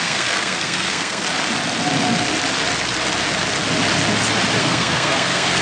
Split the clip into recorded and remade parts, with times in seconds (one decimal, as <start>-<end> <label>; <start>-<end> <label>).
0.0-1.2 remade; 1.2-4.6 recorded; 4.6-5.6 remade